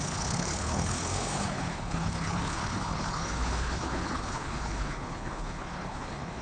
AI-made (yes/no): yes